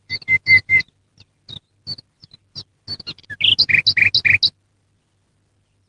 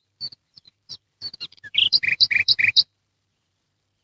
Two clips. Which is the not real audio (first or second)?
second